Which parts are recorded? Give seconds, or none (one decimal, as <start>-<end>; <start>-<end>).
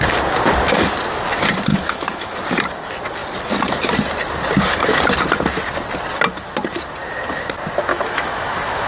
0.0-1.7; 2.3-7.9